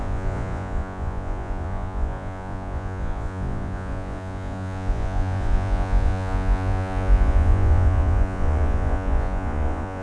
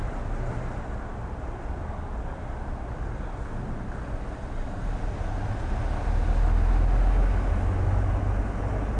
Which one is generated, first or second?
first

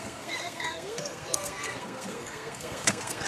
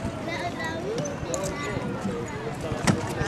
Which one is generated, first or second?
first